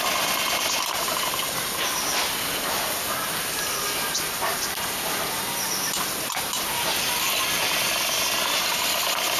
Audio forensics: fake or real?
real